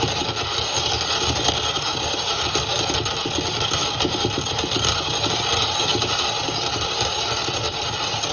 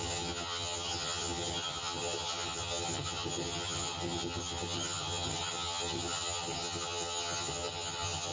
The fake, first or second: second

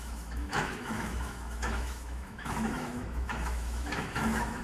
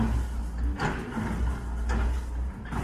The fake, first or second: first